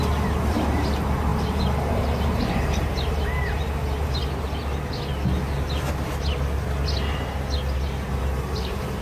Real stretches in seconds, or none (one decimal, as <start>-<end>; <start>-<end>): 4.2-8.1